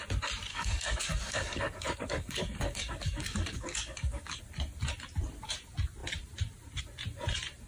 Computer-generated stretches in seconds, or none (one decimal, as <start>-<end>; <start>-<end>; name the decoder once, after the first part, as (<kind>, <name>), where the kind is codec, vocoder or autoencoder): 0.5-4.4 (codec, DAC)